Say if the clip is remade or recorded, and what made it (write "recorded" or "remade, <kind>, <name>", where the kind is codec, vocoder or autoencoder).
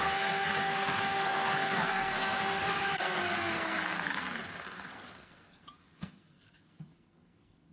remade, codec, SNAC